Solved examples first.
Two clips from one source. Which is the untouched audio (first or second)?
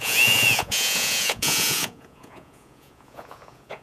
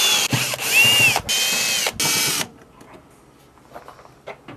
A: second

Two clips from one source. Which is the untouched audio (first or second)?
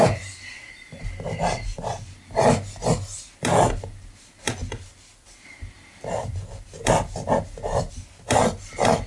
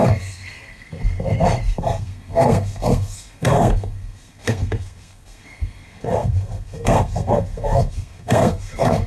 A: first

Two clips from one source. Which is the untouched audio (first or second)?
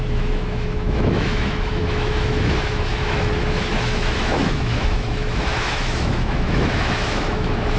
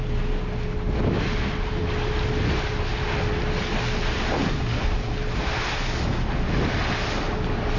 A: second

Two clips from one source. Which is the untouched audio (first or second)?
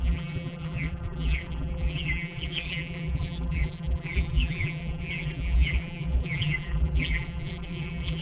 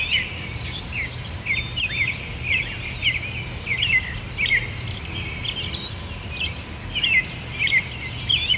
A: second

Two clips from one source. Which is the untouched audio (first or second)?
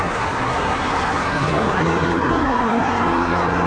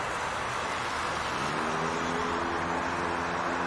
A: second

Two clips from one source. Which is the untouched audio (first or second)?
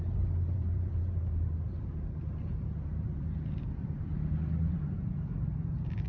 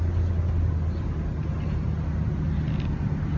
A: second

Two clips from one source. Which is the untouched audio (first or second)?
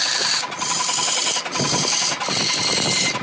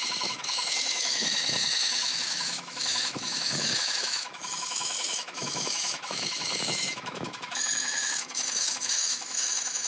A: first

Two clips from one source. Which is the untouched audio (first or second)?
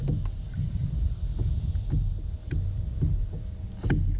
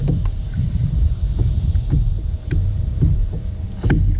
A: first